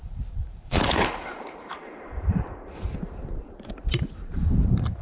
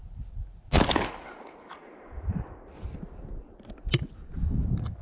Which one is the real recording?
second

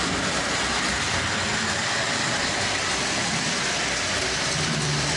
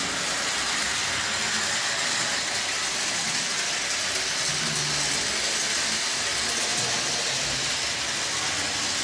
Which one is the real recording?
second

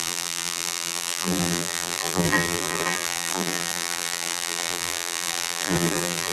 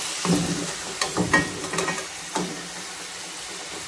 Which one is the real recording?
second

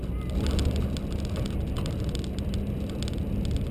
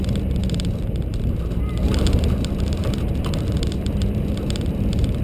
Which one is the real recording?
first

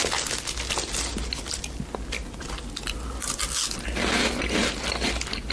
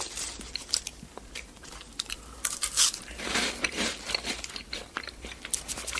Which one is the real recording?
first